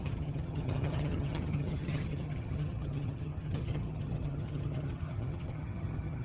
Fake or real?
fake